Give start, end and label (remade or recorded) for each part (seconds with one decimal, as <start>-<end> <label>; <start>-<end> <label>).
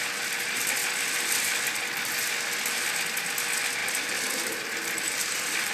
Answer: 0.0-5.7 recorded